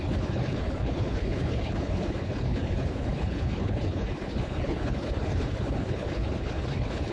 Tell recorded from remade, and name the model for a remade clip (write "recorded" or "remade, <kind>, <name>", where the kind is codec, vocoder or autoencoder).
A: remade, codec, HILCodec